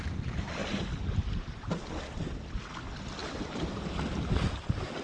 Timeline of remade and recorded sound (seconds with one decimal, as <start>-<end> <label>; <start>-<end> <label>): 0.0-0.6 recorded; 0.6-1.7 remade; 1.7-3.2 recorded; 3.2-3.8 remade; 3.8-5.0 recorded